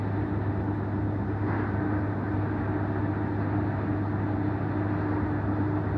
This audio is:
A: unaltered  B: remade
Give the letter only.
A